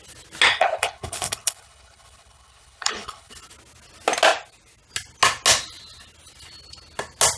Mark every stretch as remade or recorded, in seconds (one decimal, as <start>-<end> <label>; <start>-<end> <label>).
0.0-0.5 recorded; 0.5-3.3 remade; 3.3-7.4 recorded